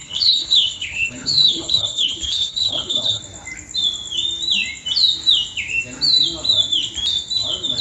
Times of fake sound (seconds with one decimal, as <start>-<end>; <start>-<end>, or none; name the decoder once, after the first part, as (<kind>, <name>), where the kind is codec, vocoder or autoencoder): 0.0-3.2 (codec, HILCodec)